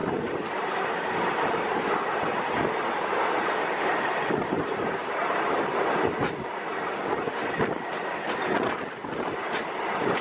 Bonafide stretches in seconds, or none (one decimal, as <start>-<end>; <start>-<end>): 0.0-10.2